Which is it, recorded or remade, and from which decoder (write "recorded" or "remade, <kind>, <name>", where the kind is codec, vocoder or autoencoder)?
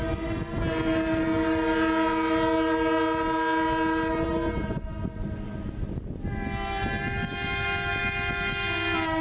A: recorded